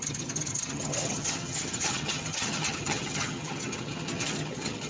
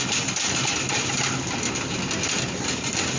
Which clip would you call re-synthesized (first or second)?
first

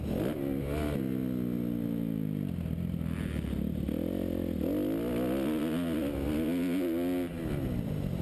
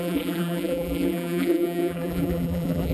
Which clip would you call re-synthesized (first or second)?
second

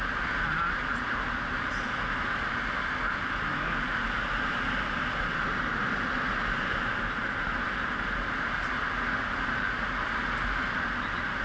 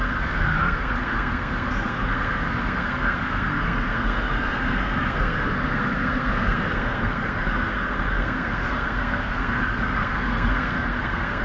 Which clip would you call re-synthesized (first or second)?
second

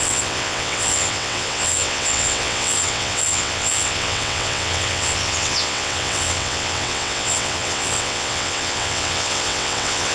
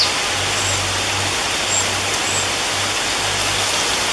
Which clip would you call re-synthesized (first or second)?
first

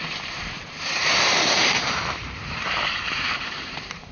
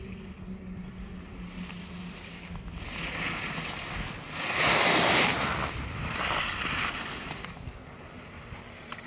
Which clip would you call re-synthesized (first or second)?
first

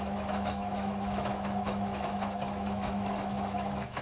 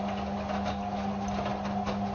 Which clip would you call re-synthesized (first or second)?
first